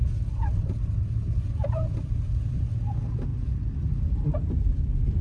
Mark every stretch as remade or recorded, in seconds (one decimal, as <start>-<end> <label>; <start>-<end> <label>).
0.0-2.6 remade; 2.6-3.3 recorded; 3.3-4.5 remade; 4.5-5.2 recorded